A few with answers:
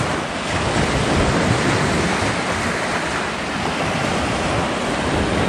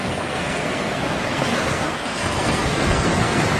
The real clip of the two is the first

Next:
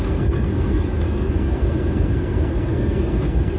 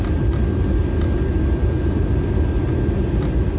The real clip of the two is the second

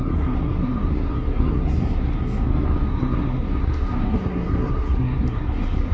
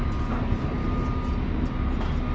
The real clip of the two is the second